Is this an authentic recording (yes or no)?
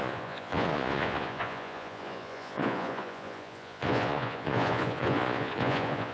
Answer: no